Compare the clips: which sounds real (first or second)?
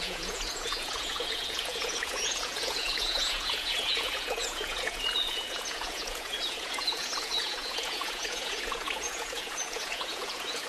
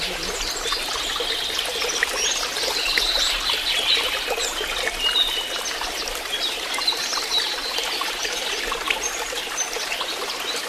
second